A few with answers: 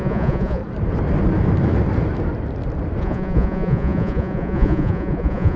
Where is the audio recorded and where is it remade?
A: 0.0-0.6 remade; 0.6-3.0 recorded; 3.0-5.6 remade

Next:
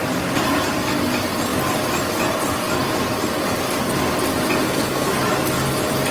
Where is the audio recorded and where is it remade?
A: 0.0-4.6 recorded; 4.6-5.1 remade; 5.1-6.1 recorded

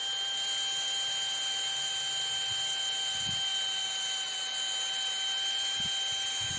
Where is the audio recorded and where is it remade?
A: 0.0-6.6 recorded

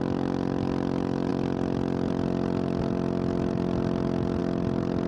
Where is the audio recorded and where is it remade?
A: 0.0-5.1 recorded

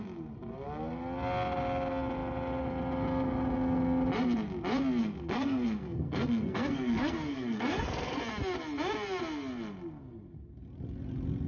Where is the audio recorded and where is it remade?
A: 0.0-5.0 recorded; 5.0-8.2 remade; 8.2-11.5 recorded

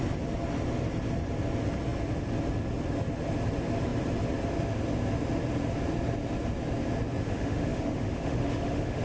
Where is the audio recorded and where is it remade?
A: 0.0-7.2 recorded; 7.2-9.0 remade